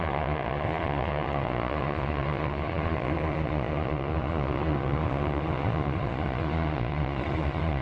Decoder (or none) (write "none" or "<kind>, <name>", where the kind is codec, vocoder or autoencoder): vocoder, Vocos